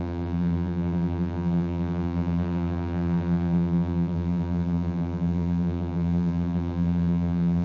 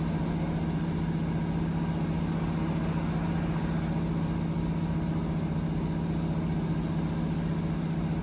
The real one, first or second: second